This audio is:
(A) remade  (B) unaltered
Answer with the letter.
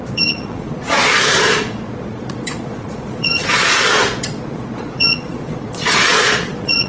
A